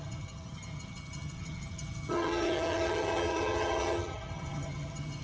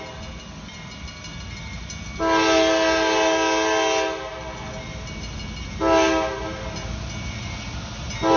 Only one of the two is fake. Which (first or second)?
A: first